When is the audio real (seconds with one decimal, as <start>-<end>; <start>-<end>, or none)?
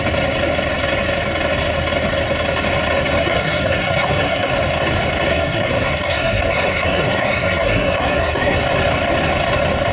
0.0-3.2; 4.5-5.3; 8.6-9.9